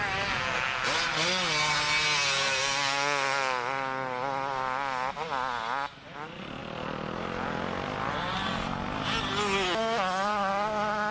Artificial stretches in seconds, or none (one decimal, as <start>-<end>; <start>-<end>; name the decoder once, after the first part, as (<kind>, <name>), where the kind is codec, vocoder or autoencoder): none